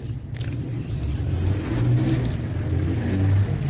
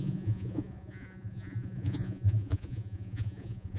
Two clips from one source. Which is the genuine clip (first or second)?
first